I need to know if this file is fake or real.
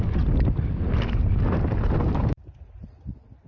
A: real